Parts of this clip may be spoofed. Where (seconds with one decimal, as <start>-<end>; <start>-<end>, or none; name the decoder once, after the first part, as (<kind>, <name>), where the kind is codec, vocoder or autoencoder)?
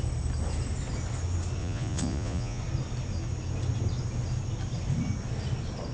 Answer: 1.6-2.6 (vocoder, Vocos)